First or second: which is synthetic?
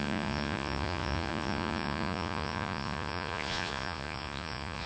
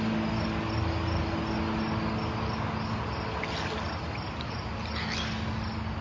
first